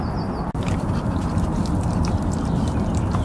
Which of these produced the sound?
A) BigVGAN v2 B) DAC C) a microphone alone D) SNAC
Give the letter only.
A